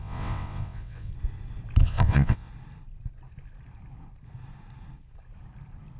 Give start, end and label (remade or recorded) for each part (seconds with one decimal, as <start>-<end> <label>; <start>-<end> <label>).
0.0-1.1 remade; 1.1-1.8 recorded; 1.8-2.5 remade; 2.5-6.0 recorded